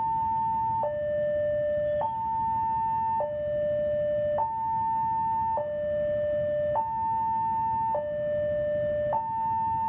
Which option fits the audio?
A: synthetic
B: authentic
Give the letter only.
B